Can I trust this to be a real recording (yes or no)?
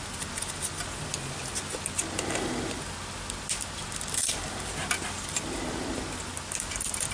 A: yes